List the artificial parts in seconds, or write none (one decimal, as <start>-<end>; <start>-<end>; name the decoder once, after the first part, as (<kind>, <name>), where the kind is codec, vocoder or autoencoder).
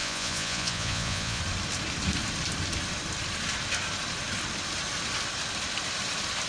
0.0-1.4 (vocoder, Vocos)